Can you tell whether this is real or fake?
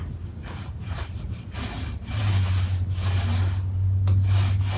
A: real